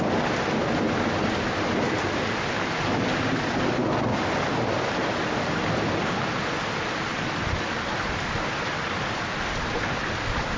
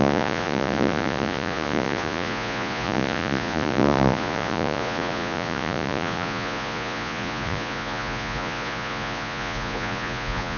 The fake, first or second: second